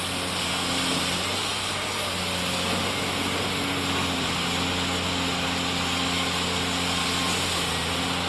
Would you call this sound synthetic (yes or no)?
no